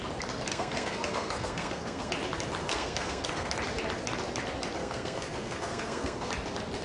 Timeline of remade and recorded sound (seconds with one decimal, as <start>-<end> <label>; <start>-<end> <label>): 0.0-0.5 recorded; 0.5-2.1 remade; 2.1-2.6 recorded; 2.6-3.5 remade; 3.5-4.8 recorded; 4.8-6.3 remade; 6.3-6.8 recorded